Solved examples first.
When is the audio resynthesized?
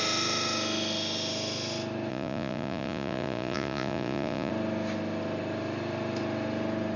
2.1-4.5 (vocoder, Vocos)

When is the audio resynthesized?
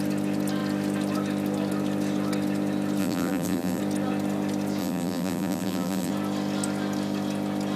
3.0-3.8 (vocoder, BigVGAN v2); 4.8-6.1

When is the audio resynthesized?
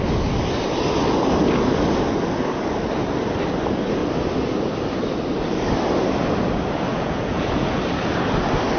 6.9-7.8 (vocoder, Vocos)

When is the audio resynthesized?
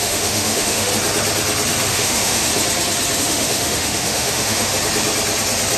0.0-0.9 (autoencoder, DAC-VAE); 1.9-2.5; 3.2-4.7